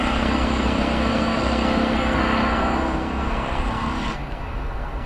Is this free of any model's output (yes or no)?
no